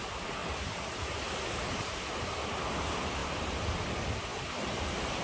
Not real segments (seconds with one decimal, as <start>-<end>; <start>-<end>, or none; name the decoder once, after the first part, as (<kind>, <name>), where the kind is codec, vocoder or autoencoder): 0.4-2.6 (vocoder, BigVGAN v2); 3.2-3.9; 4.3-5.2